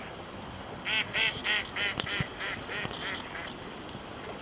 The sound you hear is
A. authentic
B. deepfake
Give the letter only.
A